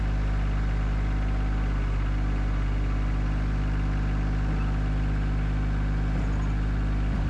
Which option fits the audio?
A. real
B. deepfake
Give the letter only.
A